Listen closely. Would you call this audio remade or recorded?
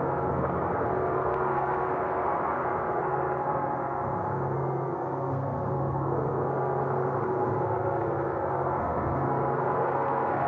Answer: remade